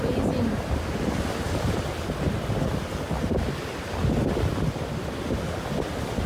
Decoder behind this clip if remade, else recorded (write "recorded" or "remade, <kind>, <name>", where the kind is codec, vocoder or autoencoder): recorded